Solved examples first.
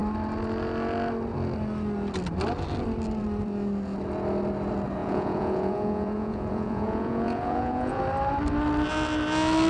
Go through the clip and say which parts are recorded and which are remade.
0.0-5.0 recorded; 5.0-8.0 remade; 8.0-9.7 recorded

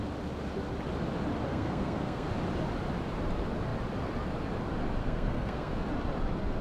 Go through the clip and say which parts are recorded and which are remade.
0.0-1.5 recorded; 1.5-2.3 remade; 2.3-5.0 recorded; 5.0-5.7 remade; 5.7-6.6 recorded